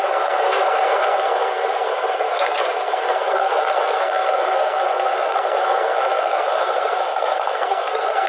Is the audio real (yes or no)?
no